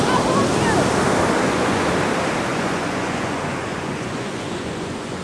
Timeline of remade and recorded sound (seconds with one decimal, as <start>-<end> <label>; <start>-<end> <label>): 0.0-1.4 recorded; 1.4-1.9 remade; 1.9-2.5 recorded; 2.5-5.2 remade

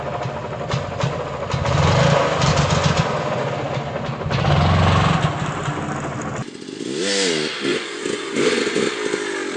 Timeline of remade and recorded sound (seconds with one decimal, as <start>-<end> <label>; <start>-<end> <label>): 0.0-2.5 recorded; 2.5-3.4 remade; 3.4-7.7 recorded; 7.7-8.8 remade; 8.8-9.6 recorded

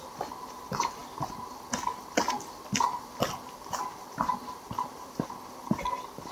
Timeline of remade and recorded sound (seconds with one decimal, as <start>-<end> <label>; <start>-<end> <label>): 0.0-6.3 recorded

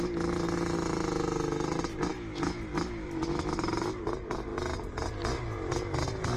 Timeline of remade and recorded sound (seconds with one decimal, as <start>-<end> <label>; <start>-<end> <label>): 0.0-2.1 recorded; 2.1-4.0 remade; 4.0-6.4 recorded